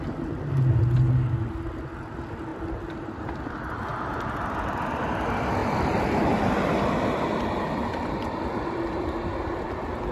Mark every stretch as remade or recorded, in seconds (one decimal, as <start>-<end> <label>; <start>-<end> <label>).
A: 0.0-5.6 recorded; 5.6-9.1 remade; 9.1-10.1 recorded